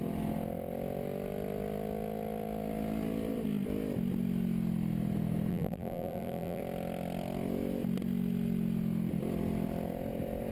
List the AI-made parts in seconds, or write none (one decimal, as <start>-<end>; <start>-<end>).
5.5-6.6